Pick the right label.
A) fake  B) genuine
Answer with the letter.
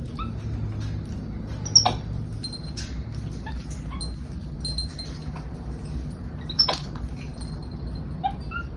B